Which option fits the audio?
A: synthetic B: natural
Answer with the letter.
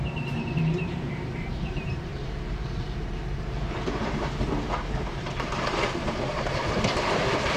A